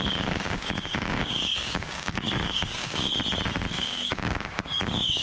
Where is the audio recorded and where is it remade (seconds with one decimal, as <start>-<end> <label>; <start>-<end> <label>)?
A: 0.0-3.1 remade; 3.1-3.8 recorded; 3.8-5.2 remade